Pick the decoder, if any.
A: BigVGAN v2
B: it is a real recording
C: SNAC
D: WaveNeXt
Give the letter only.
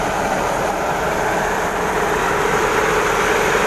A